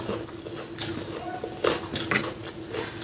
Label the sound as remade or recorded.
recorded